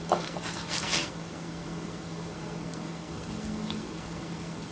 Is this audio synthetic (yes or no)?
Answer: yes